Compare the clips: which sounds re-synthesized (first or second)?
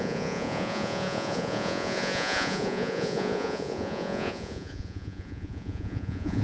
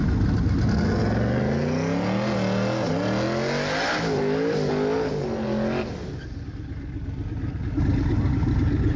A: first